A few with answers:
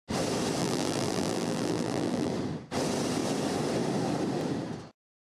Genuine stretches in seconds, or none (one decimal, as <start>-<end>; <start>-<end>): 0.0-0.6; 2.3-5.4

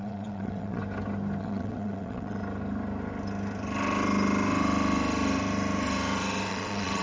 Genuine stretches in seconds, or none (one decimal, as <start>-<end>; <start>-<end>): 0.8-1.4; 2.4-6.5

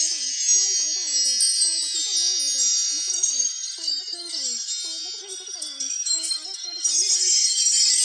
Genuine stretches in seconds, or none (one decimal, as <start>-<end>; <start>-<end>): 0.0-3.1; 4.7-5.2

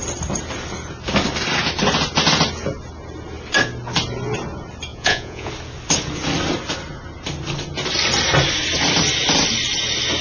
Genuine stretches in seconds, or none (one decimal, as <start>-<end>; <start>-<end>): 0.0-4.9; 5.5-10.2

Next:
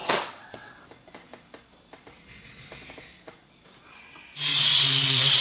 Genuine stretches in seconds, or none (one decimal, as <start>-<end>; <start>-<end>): 0.7-4.5